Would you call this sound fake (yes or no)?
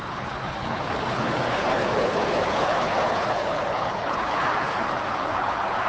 yes